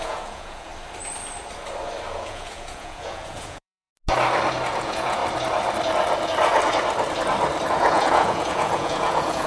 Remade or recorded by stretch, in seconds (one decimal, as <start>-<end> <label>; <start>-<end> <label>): 0.0-0.7 remade; 0.7-2.1 recorded; 2.1-3.9 remade; 3.9-4.7 recorded; 4.7-5.2 remade; 5.2-7.7 recorded; 7.7-9.5 remade